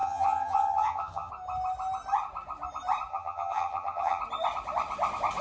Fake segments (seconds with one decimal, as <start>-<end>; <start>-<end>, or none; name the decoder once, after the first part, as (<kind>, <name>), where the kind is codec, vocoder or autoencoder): 0.0-1.3 (vocoder, HiFi-GAN); 3.1-4.2